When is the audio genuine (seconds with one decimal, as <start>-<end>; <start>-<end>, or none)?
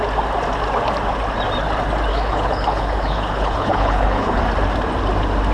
0.0-2.1; 4.4-5.5